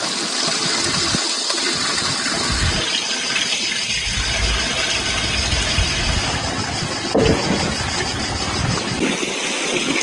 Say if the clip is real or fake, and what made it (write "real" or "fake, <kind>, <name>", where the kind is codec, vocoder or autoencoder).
real